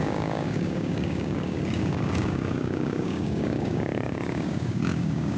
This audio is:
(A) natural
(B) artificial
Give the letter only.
B